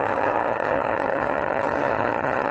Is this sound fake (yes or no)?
yes